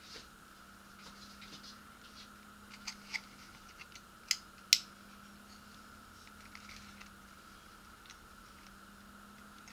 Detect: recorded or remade recorded